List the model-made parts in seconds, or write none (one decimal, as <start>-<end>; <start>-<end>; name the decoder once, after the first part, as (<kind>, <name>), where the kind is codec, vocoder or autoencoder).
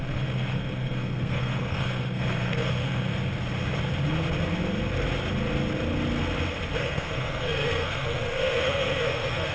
0.0-3.1 (codec, SNAC); 6.8-9.5